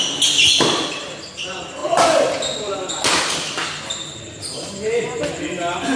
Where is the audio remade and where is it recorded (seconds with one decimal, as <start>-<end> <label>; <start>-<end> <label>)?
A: 0.0-6.0 recorded